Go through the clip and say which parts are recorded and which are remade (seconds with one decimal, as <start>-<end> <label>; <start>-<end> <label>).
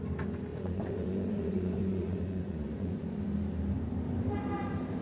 0.0-0.5 recorded; 0.5-3.2 remade; 3.2-5.0 recorded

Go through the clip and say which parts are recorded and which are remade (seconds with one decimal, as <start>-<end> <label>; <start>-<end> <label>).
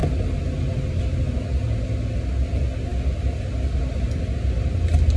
0.0-5.2 recorded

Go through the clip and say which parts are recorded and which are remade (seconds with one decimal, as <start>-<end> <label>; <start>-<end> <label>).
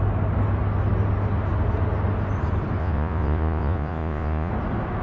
0.0-2.8 recorded; 2.8-4.5 remade; 4.5-5.0 recorded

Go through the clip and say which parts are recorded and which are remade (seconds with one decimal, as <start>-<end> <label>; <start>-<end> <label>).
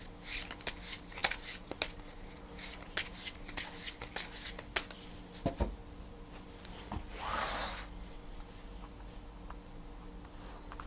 0.0-10.9 recorded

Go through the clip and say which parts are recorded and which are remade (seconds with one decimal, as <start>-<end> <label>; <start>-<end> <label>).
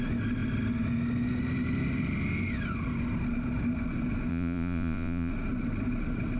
0.0-4.3 recorded; 4.3-5.3 remade; 5.3-6.4 recorded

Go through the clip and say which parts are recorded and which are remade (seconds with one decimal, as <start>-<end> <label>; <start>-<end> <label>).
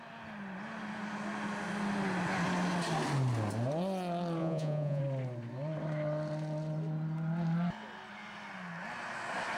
0.0-4.4 recorded; 4.4-5.0 remade; 5.0-9.6 recorded